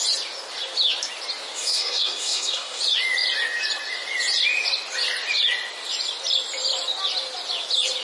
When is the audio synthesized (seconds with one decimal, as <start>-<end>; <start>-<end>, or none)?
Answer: 1.6-2.8